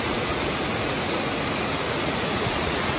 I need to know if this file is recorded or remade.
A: remade